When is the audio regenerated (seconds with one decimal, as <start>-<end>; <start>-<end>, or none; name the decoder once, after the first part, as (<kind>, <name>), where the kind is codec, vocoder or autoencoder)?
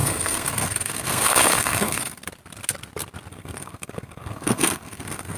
0.0-2.2 (codec, SNAC); 3.3-5.4